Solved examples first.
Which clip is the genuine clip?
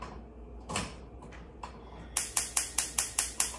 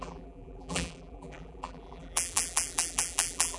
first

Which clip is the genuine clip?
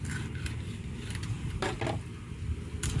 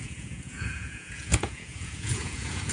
first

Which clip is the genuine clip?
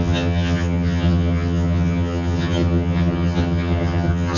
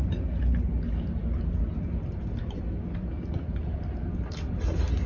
second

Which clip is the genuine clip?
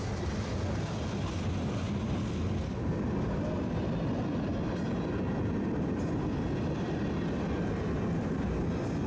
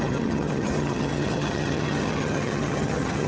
first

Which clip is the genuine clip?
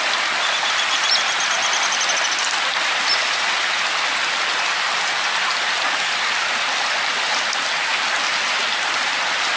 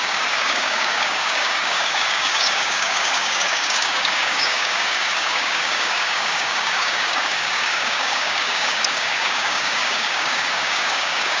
first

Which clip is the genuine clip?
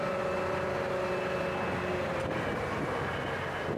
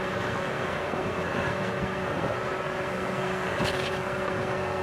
first